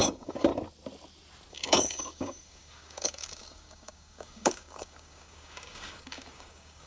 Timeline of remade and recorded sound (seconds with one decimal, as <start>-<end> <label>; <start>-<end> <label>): 0.0-0.5 remade; 0.5-1.5 recorded; 1.5-6.9 remade